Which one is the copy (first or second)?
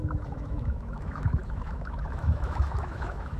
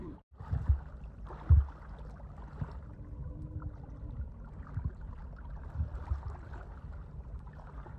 first